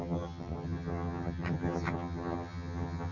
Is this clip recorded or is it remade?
remade